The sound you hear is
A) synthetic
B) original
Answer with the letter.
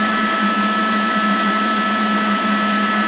A